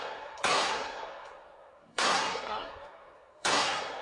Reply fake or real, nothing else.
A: fake